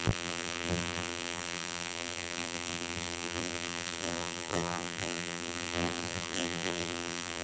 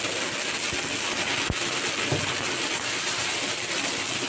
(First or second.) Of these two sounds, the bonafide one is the second